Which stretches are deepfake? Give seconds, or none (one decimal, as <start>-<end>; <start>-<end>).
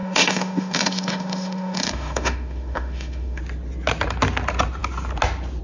0.0-3.4